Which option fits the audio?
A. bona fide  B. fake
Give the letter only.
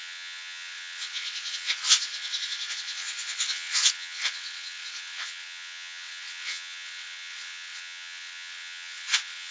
B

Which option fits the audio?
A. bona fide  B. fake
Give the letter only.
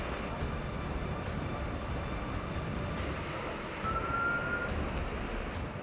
A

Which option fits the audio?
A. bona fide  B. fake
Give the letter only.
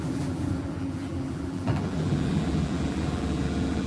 B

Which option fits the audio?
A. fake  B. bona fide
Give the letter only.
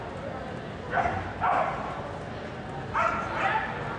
B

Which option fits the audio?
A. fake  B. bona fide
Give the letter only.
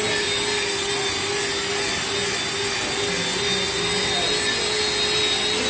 B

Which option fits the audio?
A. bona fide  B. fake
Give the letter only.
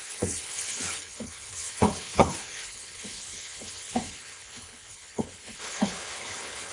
B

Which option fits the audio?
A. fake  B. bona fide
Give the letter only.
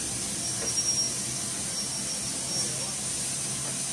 B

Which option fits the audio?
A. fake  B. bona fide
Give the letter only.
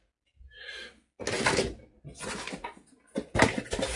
B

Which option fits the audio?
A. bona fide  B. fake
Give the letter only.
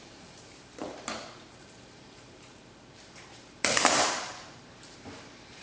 B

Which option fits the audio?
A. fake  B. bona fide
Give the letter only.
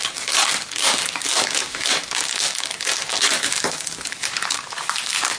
A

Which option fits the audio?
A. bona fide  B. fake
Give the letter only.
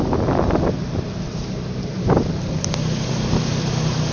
A